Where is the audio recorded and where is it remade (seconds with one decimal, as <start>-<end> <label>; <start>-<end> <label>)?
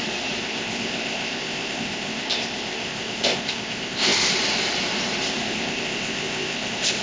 0.0-0.4 recorded; 0.4-4.3 remade; 4.3-5.4 recorded; 5.4-7.0 remade